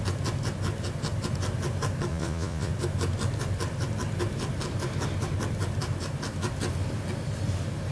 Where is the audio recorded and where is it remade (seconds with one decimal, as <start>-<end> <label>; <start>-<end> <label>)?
0.0-2.1 recorded; 2.1-2.7 remade; 2.7-7.9 recorded

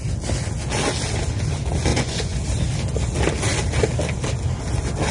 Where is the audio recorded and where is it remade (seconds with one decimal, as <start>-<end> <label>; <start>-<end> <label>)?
0.0-1.9 recorded; 1.9-2.4 remade; 2.4-5.1 recorded

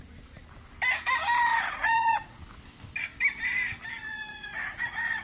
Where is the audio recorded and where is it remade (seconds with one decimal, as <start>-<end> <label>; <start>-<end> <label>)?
0.0-1.5 recorded; 1.5-2.4 remade; 2.4-4.0 recorded; 4.0-5.2 remade

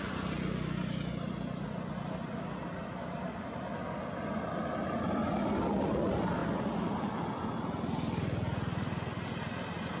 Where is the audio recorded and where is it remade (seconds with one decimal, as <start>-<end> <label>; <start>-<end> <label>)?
0.0-10.0 recorded

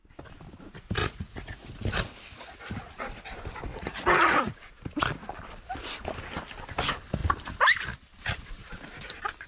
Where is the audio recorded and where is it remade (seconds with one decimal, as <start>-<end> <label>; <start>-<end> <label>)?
0.0-1.0 recorded; 1.0-1.7 remade; 1.7-3.7 recorded; 3.7-4.5 remade; 4.5-9.5 recorded